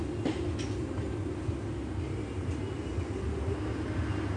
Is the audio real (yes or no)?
yes